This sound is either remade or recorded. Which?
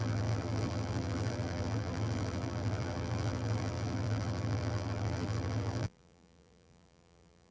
remade